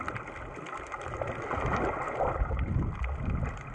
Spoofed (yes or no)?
no